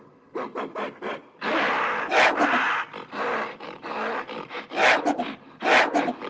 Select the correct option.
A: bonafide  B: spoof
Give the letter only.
A